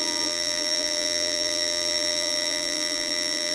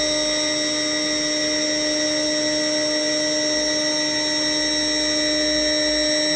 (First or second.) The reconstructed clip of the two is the first